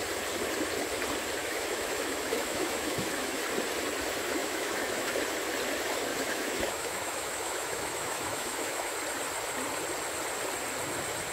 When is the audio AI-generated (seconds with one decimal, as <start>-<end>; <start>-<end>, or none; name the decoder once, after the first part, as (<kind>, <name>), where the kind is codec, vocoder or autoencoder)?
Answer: 1.4-3.4 (autoencoder, DAC-VAE); 4.4-5.2; 6.1-8.9